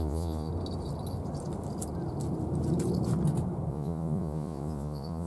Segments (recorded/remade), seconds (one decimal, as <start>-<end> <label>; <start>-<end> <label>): 0.0-0.5 remade; 0.5-3.7 recorded; 3.7-5.3 remade